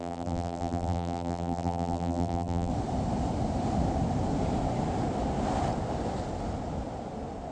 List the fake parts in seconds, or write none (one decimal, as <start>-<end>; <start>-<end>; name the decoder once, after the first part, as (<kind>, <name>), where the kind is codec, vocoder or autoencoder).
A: 0.0-2.7 (vocoder, BigVGAN v2)